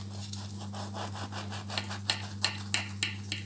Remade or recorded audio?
recorded